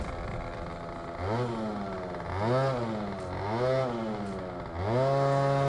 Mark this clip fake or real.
real